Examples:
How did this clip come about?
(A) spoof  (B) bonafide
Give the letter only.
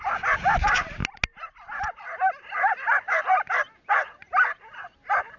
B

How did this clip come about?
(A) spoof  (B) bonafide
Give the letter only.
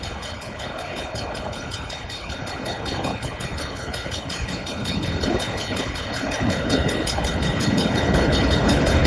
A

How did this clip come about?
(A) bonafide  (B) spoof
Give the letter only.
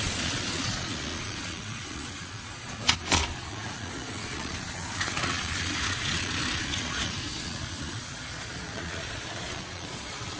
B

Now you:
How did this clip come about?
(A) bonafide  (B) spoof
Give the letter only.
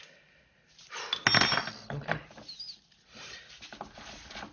A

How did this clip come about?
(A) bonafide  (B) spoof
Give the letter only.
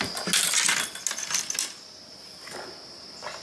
A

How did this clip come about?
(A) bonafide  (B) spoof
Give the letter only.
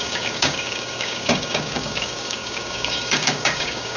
B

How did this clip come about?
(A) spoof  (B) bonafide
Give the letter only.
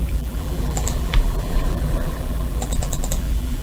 A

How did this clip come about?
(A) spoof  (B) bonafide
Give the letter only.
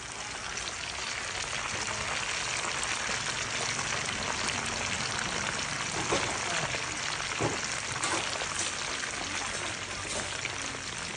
B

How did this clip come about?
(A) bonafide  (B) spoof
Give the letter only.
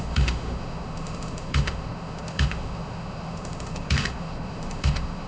B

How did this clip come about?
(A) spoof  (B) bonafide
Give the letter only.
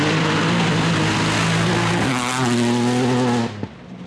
B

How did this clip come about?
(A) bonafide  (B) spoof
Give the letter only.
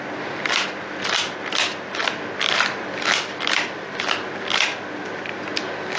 A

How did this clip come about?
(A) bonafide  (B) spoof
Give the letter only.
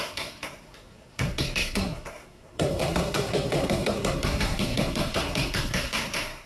B